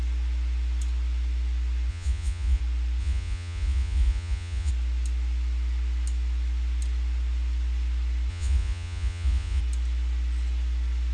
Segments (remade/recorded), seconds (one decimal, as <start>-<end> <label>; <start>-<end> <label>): 0.0-1.9 recorded; 1.9-2.6 remade; 2.6-3.0 recorded; 3.0-4.7 remade; 4.7-8.3 recorded; 8.3-9.6 remade; 9.6-11.1 recorded